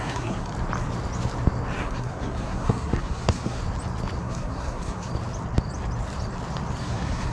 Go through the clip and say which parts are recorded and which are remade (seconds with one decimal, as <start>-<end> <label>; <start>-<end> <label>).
0.0-0.5 remade; 0.5-1.8 recorded; 1.8-3.6 remade; 3.6-4.2 recorded; 4.2-5.1 remade; 5.1-6.8 recorded; 6.8-7.3 remade

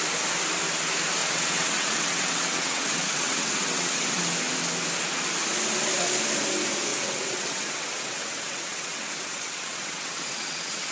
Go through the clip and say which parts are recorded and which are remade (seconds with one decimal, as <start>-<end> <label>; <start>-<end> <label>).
0.0-1.2 recorded; 1.2-4.2 remade; 4.2-6.9 recorded; 6.9-10.9 remade

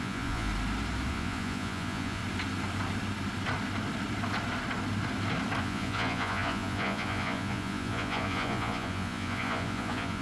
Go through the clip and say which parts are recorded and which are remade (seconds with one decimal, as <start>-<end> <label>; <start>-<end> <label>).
0.0-0.5 remade; 0.5-1.1 recorded; 1.1-2.2 remade; 2.2-5.6 recorded; 5.6-10.2 remade

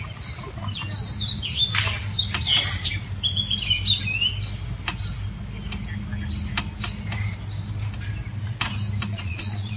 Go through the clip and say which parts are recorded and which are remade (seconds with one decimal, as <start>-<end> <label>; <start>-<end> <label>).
0.0-9.1 recorded; 9.1-9.8 remade

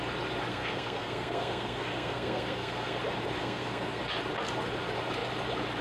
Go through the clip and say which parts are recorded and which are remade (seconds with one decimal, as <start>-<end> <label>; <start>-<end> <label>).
0.0-0.5 recorded; 0.5-3.0 remade; 3.0-3.4 recorded; 3.4-4.0 remade; 4.0-5.8 recorded